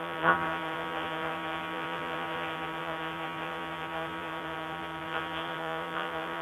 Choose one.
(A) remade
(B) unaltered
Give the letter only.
A